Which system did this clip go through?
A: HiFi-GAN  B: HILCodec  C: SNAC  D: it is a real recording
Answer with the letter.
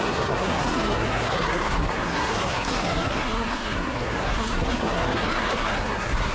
C